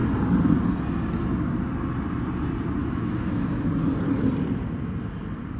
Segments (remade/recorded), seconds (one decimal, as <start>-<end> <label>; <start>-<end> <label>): 0.0-2.8 recorded; 2.8-3.5 remade; 3.5-5.6 recorded